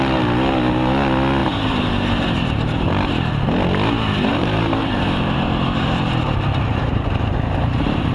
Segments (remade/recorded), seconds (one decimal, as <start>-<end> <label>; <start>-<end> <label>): 0.0-1.4 recorded; 1.4-3.3 remade; 3.3-4.3 recorded; 4.3-8.1 remade